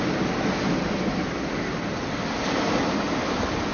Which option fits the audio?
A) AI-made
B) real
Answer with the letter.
B